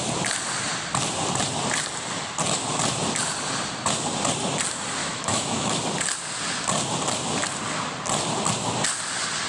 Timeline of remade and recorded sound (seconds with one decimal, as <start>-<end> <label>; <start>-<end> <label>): 0.0-5.0 recorded; 5.0-5.8 remade; 5.8-9.5 recorded